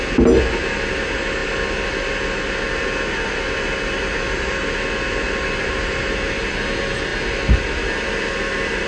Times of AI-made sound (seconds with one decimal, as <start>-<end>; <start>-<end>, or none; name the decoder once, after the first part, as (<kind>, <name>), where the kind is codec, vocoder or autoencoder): none